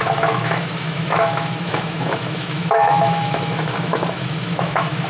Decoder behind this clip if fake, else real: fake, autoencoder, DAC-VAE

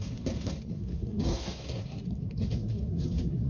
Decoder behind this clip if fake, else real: fake, codec, SNAC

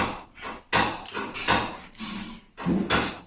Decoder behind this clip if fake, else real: real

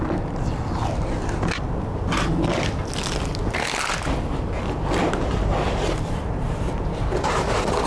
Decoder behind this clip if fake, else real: real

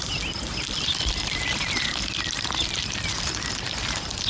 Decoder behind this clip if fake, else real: real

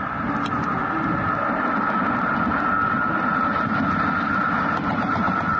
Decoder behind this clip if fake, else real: real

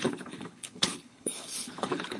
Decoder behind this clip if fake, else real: fake, codec, HILCodec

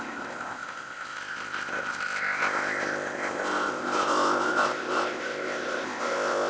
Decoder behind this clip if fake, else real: fake, codec, ZipCodec